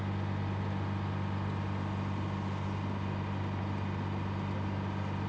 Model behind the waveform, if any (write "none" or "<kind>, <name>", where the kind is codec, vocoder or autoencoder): none